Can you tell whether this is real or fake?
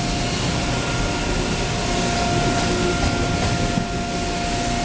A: real